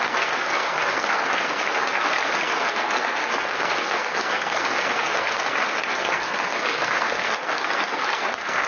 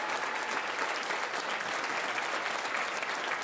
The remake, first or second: first